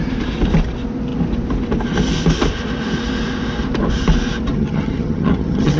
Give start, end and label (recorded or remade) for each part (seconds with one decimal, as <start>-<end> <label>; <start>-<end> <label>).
0.0-4.5 recorded; 4.5-5.8 remade